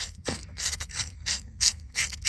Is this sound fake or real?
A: fake